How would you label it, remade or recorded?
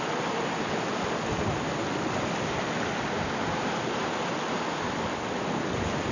recorded